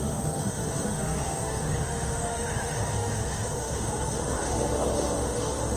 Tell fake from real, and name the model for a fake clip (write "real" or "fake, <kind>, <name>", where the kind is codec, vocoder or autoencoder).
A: fake, autoencoder, DAC-VAE